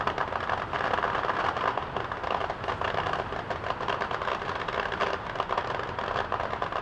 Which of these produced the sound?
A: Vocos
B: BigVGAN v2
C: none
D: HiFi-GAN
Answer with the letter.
C